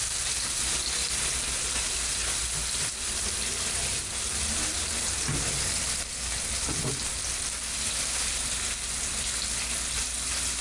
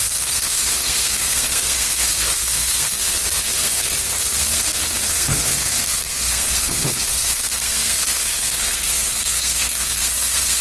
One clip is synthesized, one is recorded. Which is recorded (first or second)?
first